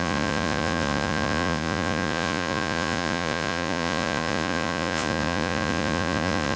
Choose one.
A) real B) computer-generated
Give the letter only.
B